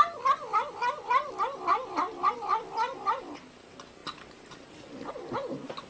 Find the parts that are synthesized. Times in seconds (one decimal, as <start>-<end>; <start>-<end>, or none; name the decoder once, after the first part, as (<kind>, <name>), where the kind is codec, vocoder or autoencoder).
none